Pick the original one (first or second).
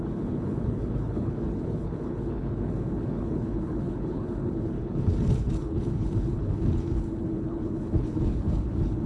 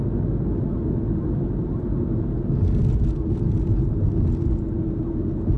second